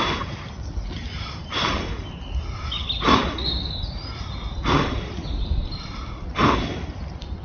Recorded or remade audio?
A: recorded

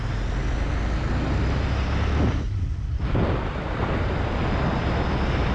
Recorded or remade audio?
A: recorded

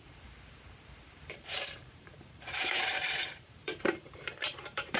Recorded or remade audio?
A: remade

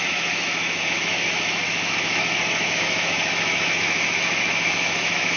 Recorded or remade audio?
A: remade